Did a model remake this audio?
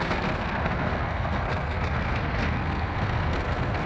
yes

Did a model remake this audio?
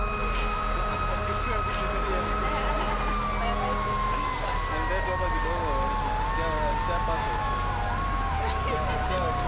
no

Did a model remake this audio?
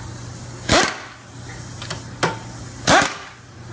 no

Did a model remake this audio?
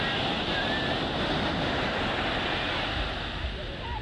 no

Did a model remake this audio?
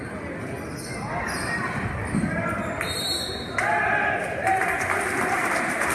no